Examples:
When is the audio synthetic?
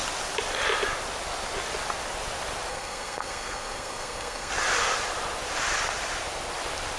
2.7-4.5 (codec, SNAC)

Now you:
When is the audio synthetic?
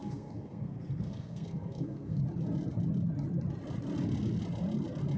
0.0-2.2 (codec, SNAC)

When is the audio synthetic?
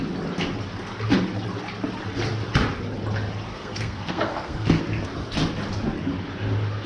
3.5-4.8 (codec, SNAC)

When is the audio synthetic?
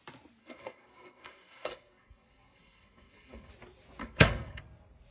0.4-3.5 (codec, SNAC); 4.0-4.6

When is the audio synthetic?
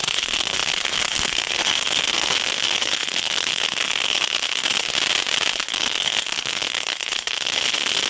0.0-4.9 (codec, SNAC); 5.5-8.1